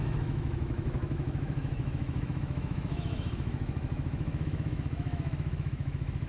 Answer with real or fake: fake